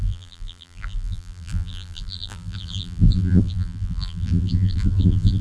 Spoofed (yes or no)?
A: yes